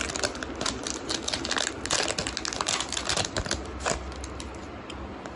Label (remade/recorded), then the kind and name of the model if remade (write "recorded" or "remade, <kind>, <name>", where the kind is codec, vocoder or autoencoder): recorded